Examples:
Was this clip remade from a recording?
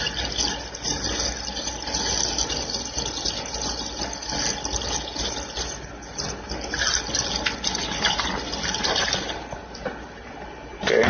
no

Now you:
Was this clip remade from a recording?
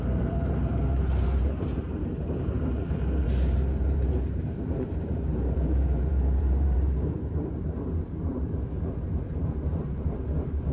yes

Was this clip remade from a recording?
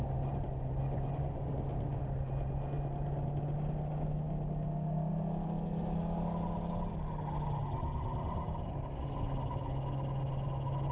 no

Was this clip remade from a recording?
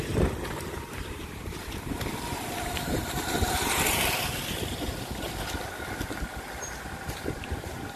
no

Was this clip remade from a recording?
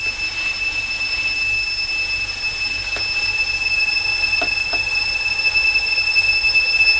no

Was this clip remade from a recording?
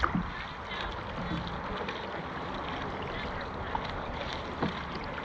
no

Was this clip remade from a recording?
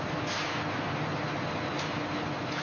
no